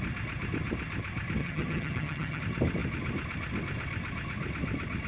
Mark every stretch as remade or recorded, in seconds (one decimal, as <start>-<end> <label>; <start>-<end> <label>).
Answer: 0.0-1.4 recorded; 1.4-2.4 remade; 2.4-5.1 recorded